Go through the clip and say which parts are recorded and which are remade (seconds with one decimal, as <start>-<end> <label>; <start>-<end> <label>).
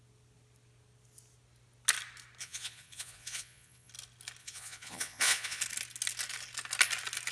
0.0-2.4 recorded; 2.4-3.9 remade; 3.9-4.4 recorded; 4.4-5.6 remade; 5.6-7.3 recorded